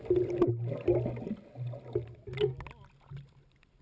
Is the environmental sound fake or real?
real